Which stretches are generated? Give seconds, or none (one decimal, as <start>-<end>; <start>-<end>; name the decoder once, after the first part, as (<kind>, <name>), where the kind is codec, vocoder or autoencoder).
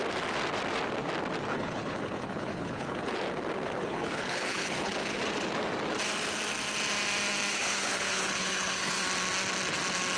1.5-3.1 (codec, HILCodec); 3.8-4.9; 7.5-9.0